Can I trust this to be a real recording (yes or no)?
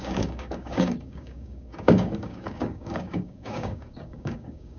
no